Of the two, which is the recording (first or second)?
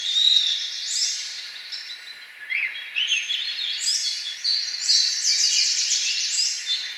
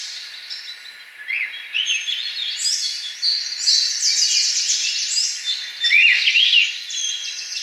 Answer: second